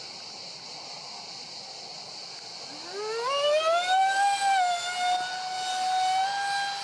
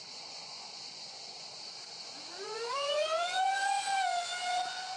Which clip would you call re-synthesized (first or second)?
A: second